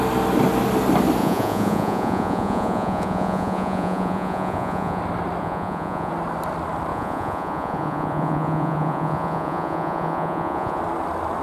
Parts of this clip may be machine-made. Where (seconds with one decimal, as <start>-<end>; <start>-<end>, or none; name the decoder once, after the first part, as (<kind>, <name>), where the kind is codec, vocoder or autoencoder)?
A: 1.2-5.0 (vocoder, Vocos); 5.4-6.1; 6.9-10.8